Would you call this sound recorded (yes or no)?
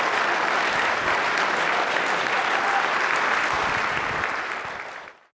yes